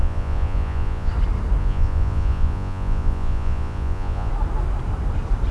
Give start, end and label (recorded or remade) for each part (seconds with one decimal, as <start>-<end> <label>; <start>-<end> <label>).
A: 0.0-1.1 remade; 1.1-1.6 recorded; 1.6-4.3 remade; 4.3-5.5 recorded